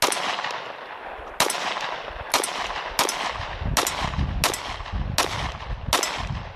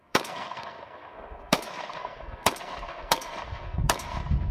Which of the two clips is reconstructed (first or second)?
second